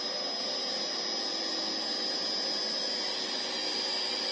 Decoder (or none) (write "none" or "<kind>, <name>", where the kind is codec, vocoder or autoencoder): none